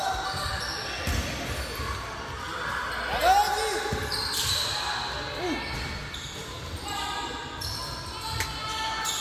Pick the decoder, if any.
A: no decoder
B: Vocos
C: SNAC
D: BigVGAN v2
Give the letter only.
A